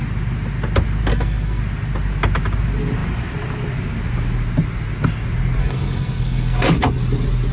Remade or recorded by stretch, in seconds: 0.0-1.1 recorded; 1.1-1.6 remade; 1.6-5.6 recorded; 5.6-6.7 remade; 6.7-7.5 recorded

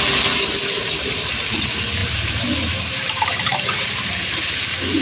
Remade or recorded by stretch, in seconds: 0.0-2.0 recorded; 2.0-5.0 remade

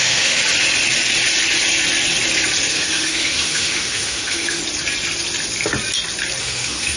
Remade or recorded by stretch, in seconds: 0.0-0.4 remade; 0.4-2.7 recorded; 2.7-4.6 remade; 4.6-6.4 recorded; 6.4-7.0 remade

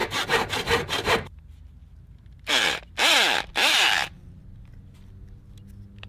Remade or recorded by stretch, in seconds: 0.0-1.3 remade; 1.3-1.8 recorded; 1.8-2.8 remade; 2.8-3.6 recorded; 3.6-4.4 remade; 4.4-6.1 recorded

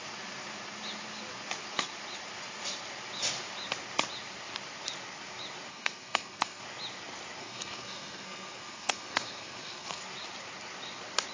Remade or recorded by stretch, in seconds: 0.0-5.7 recorded; 5.7-6.6 remade; 6.6-7.4 recorded; 7.4-10.0 remade; 10.0-11.3 recorded

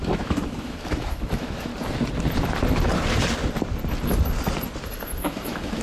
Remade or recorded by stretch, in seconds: 0.0-1.7 remade; 1.7-5.2 recorded; 5.2-5.8 remade

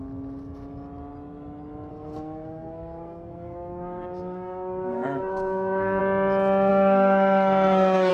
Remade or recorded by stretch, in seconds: 0.0-1.9 recorded; 1.9-6.0 remade; 6.0-6.7 recorded; 6.7-8.1 remade

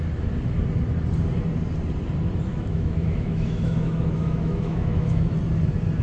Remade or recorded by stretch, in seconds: 0.0-2.5 recorded; 2.5-5.3 remade; 5.3-6.0 recorded